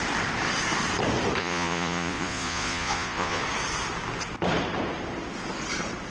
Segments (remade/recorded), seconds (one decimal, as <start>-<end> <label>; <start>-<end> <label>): 0.0-1.4 recorded; 1.4-3.4 remade; 3.4-6.1 recorded